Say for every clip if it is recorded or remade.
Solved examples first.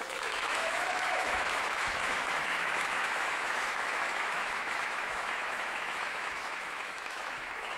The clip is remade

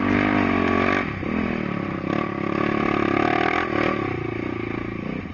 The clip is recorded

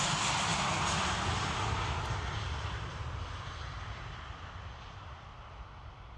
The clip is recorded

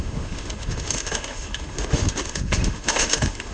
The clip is remade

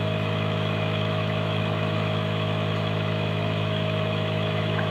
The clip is remade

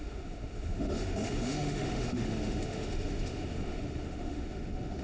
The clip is remade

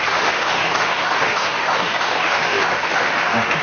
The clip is remade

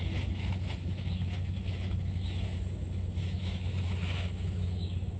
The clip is remade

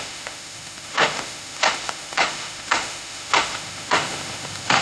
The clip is remade